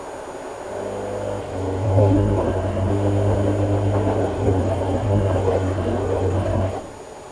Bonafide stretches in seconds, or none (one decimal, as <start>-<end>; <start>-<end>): 0.0-1.4; 2.9-4.2; 6.8-7.3